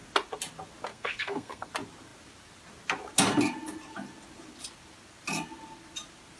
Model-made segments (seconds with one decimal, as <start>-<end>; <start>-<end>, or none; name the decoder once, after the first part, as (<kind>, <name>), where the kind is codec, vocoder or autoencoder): 0.9-1.7 (codec, SNAC)